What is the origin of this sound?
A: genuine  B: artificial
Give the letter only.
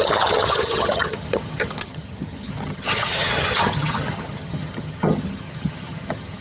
B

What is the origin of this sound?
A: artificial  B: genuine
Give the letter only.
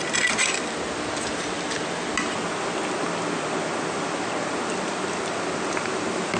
B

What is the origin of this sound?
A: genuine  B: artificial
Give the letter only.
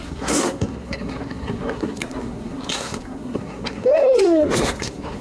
B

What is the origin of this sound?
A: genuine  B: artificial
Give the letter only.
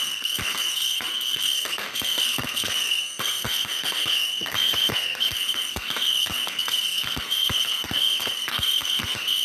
B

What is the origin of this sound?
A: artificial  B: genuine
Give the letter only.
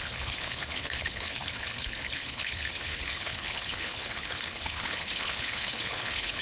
A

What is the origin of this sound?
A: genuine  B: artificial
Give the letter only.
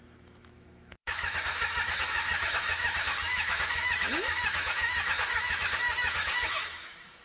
B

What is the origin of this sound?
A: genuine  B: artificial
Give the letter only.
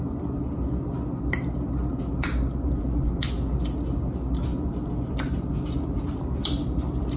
A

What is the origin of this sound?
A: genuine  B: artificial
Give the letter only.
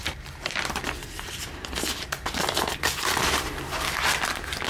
B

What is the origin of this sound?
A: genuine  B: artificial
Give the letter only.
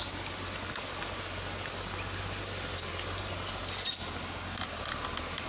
A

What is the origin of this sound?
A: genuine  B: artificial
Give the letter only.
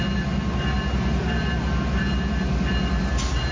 A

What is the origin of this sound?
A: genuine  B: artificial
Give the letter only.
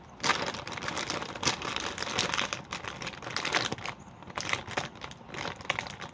A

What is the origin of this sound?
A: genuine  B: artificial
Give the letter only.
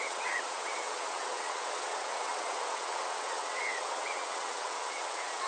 B